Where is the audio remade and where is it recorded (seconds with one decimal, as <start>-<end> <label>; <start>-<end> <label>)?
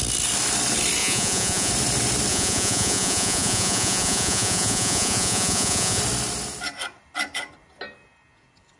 0.0-1.0 recorded; 1.0-1.7 remade; 1.7-2.3 recorded; 2.3-6.0 remade; 6.0-8.8 recorded